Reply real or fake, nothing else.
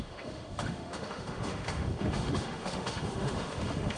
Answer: fake